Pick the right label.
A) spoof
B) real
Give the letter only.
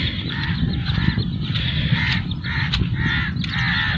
B